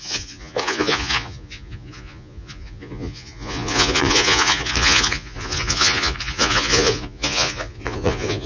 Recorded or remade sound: remade